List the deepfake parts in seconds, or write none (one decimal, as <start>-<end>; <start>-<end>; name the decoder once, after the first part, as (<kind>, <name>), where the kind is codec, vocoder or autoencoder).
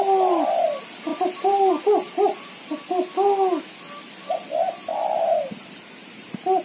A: 1.1-1.7 (vocoder, BigVGAN v2); 4.9-6.6